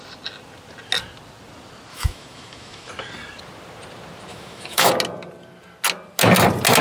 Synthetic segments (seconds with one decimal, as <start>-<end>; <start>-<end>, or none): 1.9-2.9; 4.3-4.9